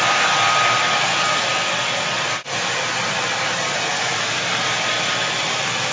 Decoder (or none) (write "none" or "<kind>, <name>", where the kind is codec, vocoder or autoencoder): none